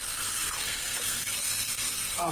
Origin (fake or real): fake